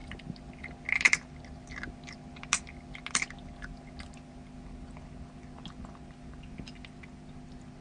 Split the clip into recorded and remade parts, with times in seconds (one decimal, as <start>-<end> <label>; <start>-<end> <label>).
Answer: 0.0-7.8 recorded